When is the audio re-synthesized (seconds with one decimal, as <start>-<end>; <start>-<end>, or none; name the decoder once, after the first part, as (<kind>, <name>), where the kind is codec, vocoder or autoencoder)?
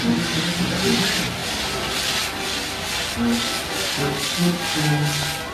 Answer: none